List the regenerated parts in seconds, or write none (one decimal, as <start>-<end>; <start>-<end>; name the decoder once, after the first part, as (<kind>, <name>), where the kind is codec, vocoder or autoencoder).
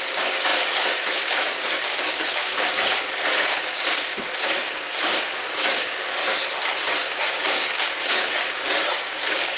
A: 0.0-6.2 (codec, DAC); 7.0-9.6